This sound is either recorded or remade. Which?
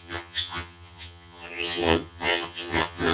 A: remade